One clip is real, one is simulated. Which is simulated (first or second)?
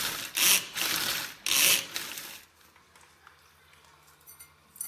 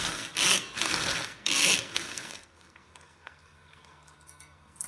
second